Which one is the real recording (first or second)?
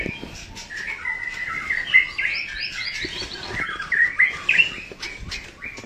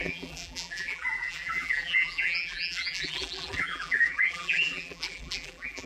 first